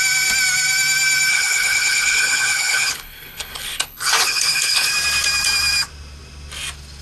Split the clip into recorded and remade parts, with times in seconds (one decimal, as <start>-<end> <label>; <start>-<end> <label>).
0.0-1.3 recorded; 1.3-4.9 remade; 4.9-7.0 recorded